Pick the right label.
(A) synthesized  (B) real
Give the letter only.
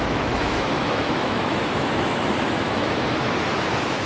A